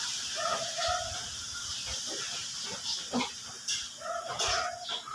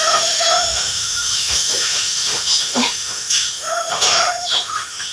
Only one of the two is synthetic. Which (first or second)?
second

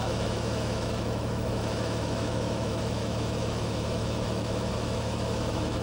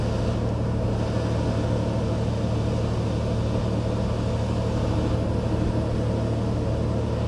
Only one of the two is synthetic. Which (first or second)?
first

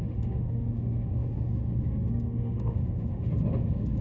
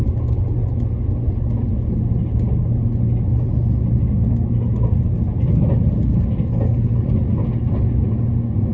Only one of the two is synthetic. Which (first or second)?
first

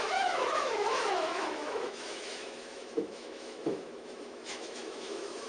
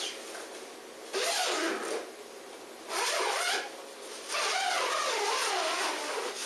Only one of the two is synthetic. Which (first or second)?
first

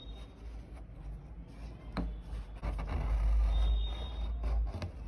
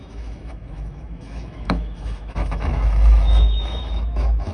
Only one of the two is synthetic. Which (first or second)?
second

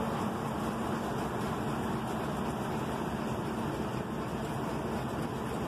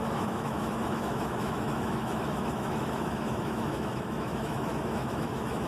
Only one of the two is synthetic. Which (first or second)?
second